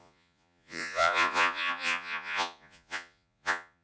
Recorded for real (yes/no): no